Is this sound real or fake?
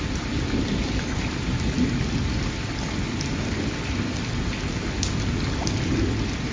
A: real